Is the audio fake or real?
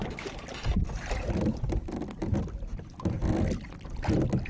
real